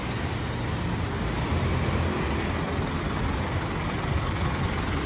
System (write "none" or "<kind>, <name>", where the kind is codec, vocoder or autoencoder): none